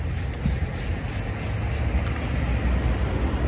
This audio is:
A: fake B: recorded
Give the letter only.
B